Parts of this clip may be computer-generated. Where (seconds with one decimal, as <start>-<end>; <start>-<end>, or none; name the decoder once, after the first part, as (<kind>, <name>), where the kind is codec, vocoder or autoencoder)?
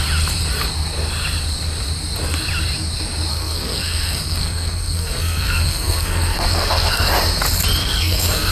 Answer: 3.3-7.1 (codec, SNAC); 7.8-8.5